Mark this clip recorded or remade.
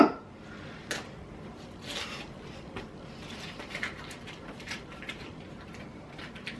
recorded